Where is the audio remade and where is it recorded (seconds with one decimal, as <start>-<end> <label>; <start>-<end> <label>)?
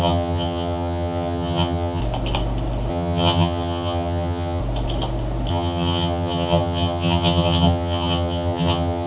0.0-2.0 remade; 2.0-2.9 recorded; 2.9-4.6 remade; 4.6-5.5 recorded; 5.5-9.1 remade